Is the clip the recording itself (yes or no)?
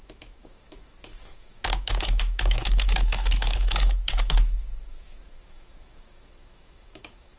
no